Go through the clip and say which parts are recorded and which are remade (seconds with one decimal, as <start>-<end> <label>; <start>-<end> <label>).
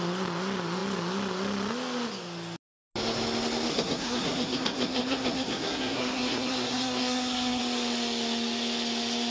0.0-3.7 recorded; 3.7-7.6 remade; 7.6-9.3 recorded